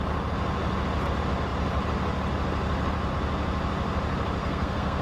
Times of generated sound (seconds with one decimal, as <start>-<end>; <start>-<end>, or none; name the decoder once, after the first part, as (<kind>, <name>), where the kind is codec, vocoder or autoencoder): 4.4-5.0 (codec, SNAC)